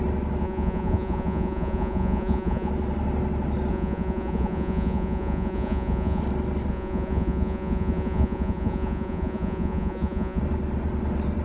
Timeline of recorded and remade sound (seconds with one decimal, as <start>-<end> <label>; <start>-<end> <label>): 0.0-0.4 recorded; 0.4-2.7 remade; 2.7-3.7 recorded; 3.7-6.2 remade; 6.2-6.7 recorded; 6.7-10.4 remade; 10.4-11.4 recorded